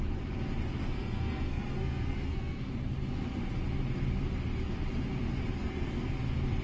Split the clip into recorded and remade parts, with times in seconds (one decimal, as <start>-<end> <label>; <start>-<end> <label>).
0.0-0.8 recorded; 0.8-2.7 remade; 2.7-5.6 recorded; 5.6-6.1 remade; 6.1-6.6 recorded